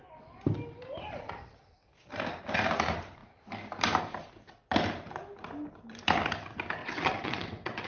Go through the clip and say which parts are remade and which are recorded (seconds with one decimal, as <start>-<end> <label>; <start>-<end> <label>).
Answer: 0.0-6.8 recorded; 6.8-7.9 remade